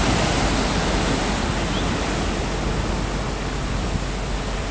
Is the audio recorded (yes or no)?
yes